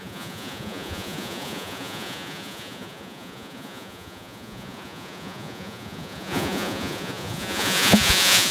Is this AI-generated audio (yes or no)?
yes